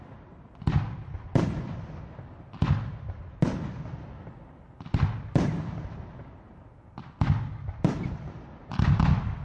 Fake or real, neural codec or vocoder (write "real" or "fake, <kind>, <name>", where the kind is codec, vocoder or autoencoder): real